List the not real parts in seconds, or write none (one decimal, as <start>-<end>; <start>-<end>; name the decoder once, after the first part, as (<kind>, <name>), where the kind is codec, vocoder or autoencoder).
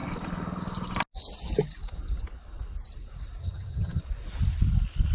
3.4-4.0 (vocoder, HiFi-GAN)